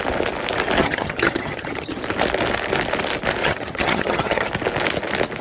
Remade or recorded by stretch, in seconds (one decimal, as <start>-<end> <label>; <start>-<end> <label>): 0.0-0.8 recorded; 0.8-2.0 remade; 2.0-3.4 recorded; 3.4-4.5 remade; 4.5-5.4 recorded